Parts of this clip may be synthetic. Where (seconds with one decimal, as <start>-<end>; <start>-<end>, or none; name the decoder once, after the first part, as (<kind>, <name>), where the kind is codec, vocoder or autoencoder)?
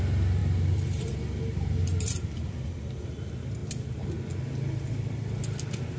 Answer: 0.4-3.0 (vocoder, BigVGAN v2)